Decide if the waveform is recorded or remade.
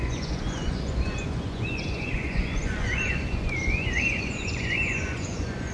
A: remade